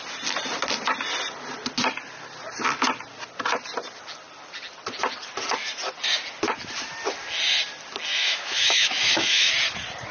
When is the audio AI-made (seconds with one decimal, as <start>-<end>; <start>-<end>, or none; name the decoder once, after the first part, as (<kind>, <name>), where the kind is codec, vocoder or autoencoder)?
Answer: 8.1-9.5 (autoencoder, DAC-VAE)